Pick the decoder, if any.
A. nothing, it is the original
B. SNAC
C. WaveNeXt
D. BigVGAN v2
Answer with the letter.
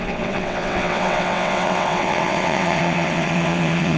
C